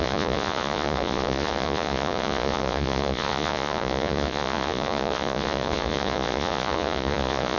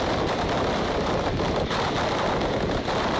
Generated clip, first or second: first